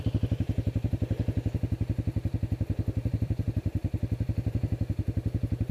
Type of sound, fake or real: fake